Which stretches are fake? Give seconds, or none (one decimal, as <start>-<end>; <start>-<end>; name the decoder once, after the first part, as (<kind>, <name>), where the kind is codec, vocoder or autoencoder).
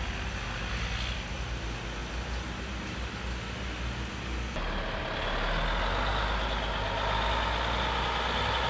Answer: none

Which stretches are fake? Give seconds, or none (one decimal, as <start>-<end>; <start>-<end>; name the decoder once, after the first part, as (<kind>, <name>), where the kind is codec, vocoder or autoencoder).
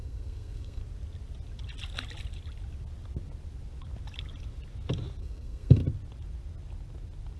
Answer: 0.0-0.8 (codec, SNAC); 5.2-5.8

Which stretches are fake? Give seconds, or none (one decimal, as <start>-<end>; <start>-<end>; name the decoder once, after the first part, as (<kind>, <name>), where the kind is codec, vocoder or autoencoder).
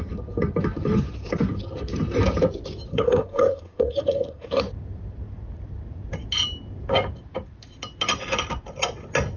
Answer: 2.9-4.6 (codec, SNAC)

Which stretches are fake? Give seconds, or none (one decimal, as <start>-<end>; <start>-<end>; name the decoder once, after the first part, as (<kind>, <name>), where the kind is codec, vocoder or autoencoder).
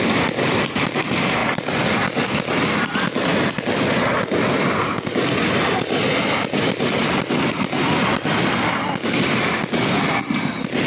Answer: none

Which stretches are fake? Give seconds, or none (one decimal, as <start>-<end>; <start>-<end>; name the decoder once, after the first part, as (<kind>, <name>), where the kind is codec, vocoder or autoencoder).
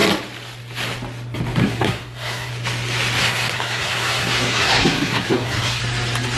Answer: 1.6-2.5 (codec, SNAC); 3.2-5.8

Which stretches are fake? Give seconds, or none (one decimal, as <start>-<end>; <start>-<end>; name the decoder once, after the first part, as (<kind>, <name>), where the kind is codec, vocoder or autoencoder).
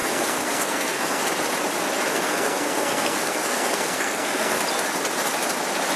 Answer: 0.0-1.3 (codec, SNAC); 2.1-4.6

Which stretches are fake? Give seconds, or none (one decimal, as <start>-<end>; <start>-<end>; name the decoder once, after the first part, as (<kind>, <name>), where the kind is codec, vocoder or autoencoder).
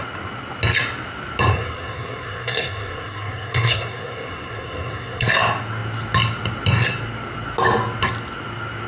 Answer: 1.5-5.3 (codec, SNAC)